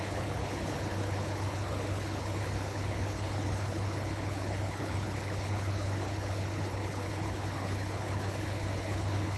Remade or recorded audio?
remade